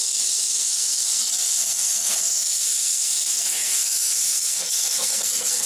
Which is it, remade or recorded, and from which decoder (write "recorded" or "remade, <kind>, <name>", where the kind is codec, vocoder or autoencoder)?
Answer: remade, codec, SNAC